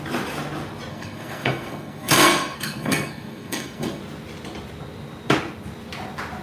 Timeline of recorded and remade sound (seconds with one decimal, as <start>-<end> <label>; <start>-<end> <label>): 0.0-0.9 recorded; 0.9-4.0 remade; 4.0-6.4 recorded